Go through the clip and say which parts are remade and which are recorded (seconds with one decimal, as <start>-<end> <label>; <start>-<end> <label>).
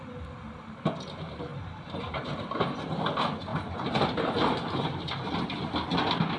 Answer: 0.0-1.5 recorded; 1.5-3.0 remade; 3.0-3.5 recorded; 3.5-5.3 remade; 5.3-6.4 recorded